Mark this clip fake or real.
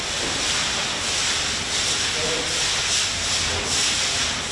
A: real